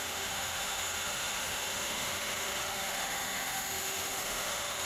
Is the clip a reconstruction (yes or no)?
yes